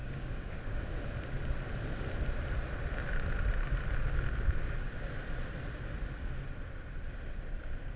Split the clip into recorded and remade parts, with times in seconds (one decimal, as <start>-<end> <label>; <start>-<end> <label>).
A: 0.0-0.9 remade; 0.9-8.0 recorded